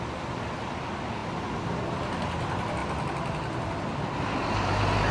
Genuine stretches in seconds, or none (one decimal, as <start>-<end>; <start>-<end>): 0.0-5.1